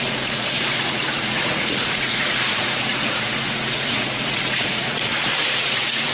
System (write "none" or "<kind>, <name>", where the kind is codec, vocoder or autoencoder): vocoder, Vocos